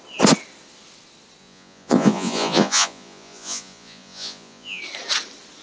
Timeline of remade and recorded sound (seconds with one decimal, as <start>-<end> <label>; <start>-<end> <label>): 0.0-1.4 recorded; 1.4-4.8 remade; 4.8-5.6 recorded